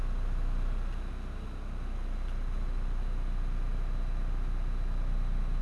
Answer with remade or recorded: recorded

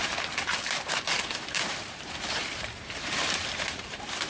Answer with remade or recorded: remade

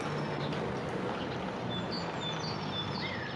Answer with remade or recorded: recorded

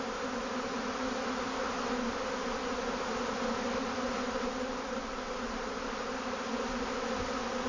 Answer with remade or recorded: recorded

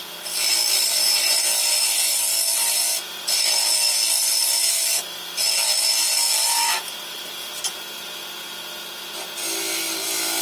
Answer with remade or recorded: recorded